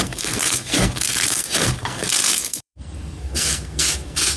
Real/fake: fake